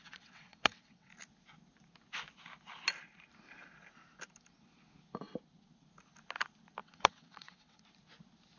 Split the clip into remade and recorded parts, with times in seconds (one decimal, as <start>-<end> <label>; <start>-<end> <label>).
0.0-1.1 remade; 1.1-6.8 recorded; 6.8-7.8 remade; 7.8-8.6 recorded

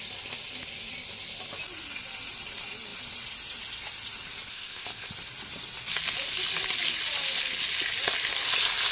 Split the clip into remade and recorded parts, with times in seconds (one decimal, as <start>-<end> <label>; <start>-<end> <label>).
0.0-4.5 recorded; 4.5-5.1 remade; 5.1-8.9 recorded

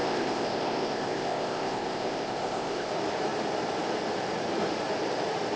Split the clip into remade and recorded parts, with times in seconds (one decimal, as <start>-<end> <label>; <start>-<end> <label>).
0.0-2.9 remade; 2.9-5.6 recorded